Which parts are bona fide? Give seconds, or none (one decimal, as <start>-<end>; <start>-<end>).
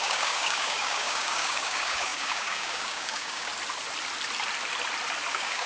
3.5-5.3